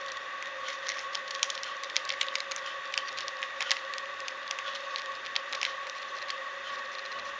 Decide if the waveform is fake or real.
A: real